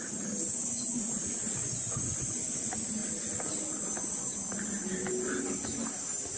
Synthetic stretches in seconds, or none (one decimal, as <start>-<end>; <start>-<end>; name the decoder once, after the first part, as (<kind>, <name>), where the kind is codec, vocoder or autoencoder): 1.6-2.5 (vocoder, Vocos)